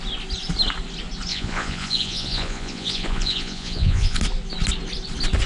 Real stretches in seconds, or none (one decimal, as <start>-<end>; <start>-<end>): 0.0-1.3; 4.2-5.5